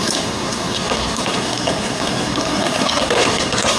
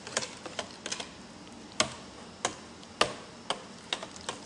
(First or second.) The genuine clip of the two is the second